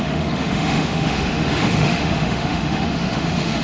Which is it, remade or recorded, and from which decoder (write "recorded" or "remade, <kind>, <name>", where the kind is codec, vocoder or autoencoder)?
remade, autoencoder, DAC-VAE